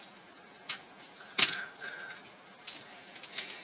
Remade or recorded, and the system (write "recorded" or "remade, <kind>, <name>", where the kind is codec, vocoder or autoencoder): recorded